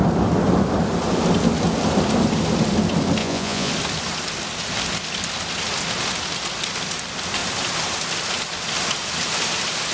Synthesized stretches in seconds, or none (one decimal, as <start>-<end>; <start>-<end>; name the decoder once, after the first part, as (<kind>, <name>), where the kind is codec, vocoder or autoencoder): 3.2-3.7 (vocoder, Vocos)